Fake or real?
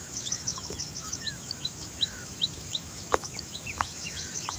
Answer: fake